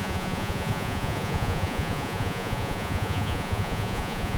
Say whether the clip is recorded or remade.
remade